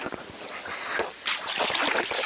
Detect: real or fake real